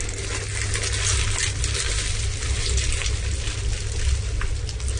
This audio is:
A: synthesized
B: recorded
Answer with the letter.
B